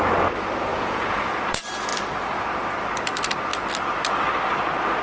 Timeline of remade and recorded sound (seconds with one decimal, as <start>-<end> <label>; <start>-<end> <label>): 0.0-0.7 recorded; 0.7-1.4 remade; 1.4-5.0 recorded